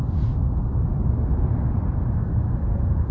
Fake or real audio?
real